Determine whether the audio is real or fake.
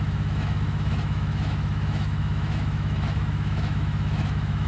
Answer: fake